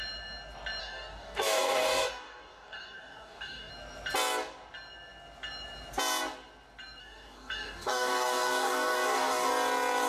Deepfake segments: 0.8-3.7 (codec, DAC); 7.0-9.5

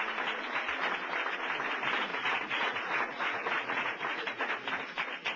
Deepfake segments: 2.1-4.5 (vocoder, Vocos)

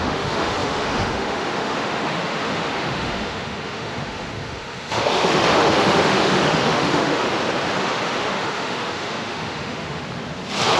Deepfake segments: 0.0-7.3 (autoencoder, DAC-VAE); 7.8-10.0

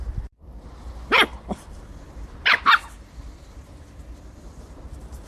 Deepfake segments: none